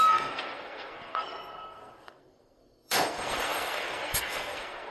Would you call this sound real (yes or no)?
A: no